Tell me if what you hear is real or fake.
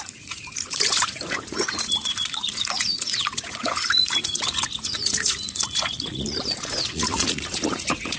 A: fake